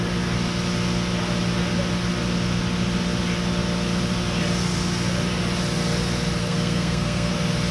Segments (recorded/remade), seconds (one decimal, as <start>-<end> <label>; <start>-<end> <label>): 0.0-6.4 recorded; 6.4-7.3 remade; 7.3-7.7 recorded